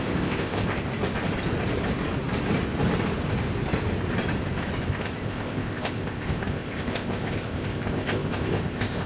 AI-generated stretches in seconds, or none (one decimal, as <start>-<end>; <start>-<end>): 0.0-0.9; 4.9-9.1